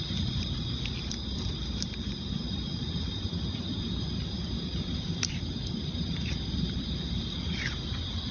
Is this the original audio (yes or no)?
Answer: no